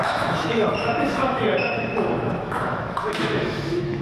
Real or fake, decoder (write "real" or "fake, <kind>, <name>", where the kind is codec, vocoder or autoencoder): fake, autoencoder, DAC-VAE